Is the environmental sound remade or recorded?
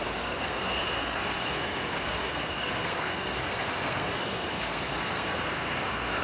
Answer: remade